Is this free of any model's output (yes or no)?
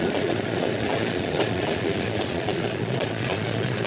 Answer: no